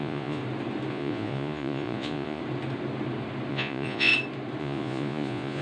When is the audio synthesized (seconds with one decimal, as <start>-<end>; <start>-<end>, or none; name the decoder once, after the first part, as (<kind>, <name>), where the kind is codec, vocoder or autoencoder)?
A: 0.0-0.4 (vocoder, Vocos); 0.9-2.4; 3.5-4.1; 4.6-5.6